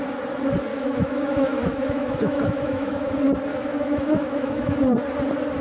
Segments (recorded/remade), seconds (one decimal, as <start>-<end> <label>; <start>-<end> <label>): 0.0-0.7 recorded; 0.7-3.1 remade; 3.1-3.5 recorded; 3.5-4.8 remade; 4.8-5.6 recorded